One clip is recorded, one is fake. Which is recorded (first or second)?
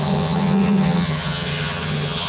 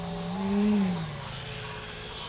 second